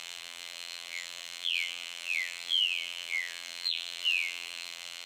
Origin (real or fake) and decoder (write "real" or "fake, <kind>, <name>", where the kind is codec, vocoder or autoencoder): fake, vocoder, BigVGAN v2